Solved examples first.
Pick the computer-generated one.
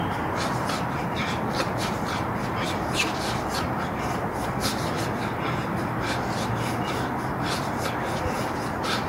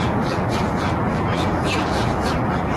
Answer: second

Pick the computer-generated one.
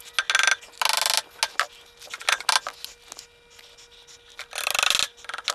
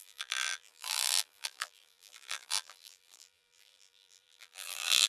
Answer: second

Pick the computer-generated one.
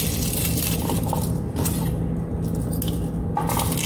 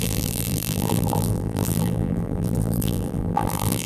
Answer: second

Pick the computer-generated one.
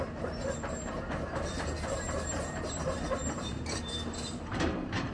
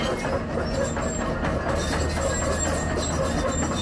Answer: first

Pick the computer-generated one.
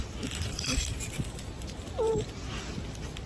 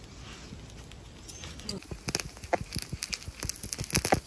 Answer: first